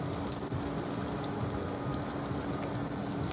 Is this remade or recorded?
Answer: recorded